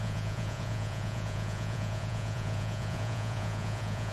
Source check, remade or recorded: remade